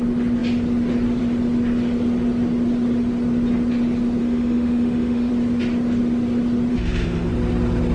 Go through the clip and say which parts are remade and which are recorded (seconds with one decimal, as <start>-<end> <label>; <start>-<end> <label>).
0.0-4.2 recorded; 4.2-5.3 remade; 5.3-6.7 recorded; 6.7-7.3 remade; 7.3-7.9 recorded